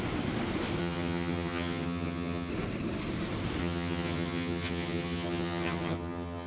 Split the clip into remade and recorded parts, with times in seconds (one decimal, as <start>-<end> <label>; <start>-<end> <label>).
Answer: 0.0-0.8 recorded; 0.8-2.5 remade; 2.5-3.6 recorded; 3.6-6.5 remade